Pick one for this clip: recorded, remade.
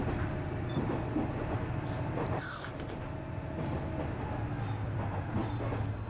recorded